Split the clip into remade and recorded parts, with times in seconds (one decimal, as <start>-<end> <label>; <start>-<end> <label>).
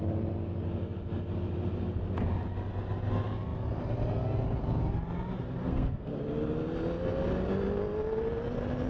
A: 0.0-5.6 recorded; 5.6-6.2 remade; 6.2-8.9 recorded